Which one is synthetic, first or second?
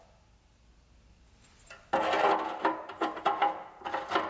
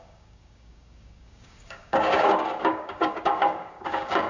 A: second